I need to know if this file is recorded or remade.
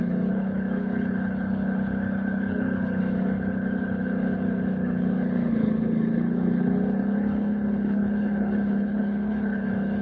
remade